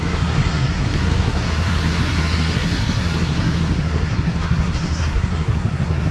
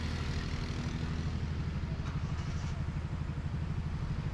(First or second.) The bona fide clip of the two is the second